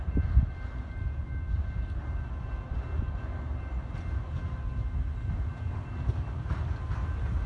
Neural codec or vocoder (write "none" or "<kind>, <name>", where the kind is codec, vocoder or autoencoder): none